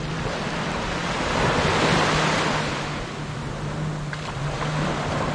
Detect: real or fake real